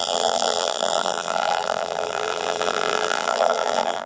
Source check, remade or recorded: remade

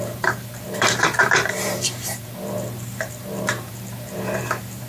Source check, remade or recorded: remade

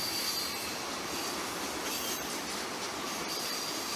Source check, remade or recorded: recorded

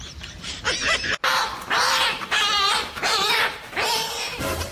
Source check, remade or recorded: remade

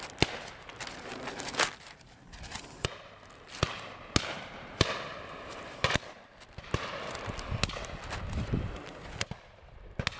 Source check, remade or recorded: recorded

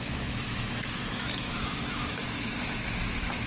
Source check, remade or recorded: remade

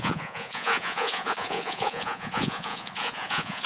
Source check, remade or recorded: remade